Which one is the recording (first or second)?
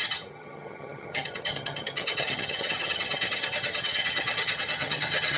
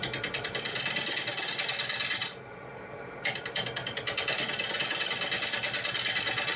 second